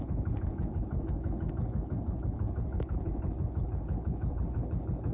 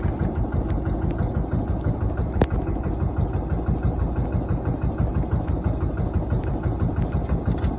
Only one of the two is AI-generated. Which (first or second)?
first